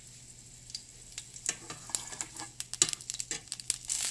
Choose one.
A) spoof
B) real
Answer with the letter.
B